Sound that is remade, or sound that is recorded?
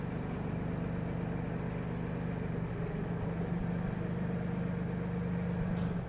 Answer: remade